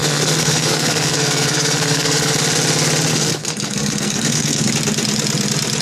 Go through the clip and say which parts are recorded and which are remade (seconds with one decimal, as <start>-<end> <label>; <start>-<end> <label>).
0.0-2.3 remade; 2.3-3.1 recorded; 3.1-4.7 remade; 4.7-5.8 recorded